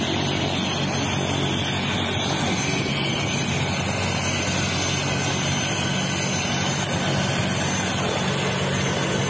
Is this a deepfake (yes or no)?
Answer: no